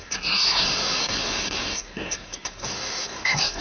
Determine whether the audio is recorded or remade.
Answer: remade